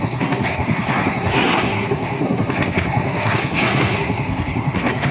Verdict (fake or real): fake